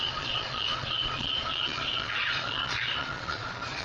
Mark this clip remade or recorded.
remade